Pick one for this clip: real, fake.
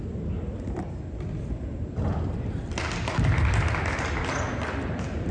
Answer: real